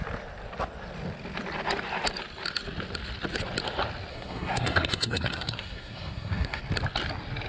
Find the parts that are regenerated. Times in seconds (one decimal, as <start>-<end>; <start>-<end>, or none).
4.1-6.6